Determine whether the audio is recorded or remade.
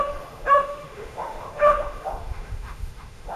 remade